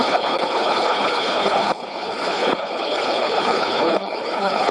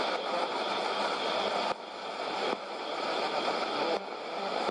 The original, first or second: second